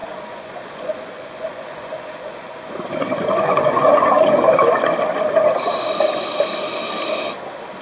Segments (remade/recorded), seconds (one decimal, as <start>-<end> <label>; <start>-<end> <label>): 0.0-4.4 remade; 4.4-7.8 recorded